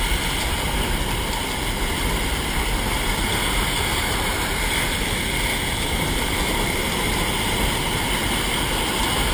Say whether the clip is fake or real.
real